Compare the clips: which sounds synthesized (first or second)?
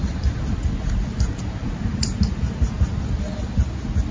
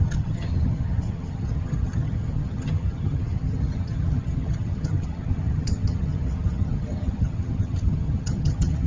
second